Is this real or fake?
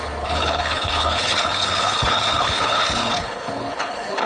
fake